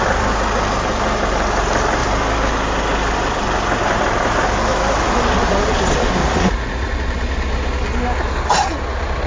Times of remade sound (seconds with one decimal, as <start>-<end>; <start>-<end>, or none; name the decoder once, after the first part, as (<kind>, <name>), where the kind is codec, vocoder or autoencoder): 6.2-6.9 (vocoder, Vocos)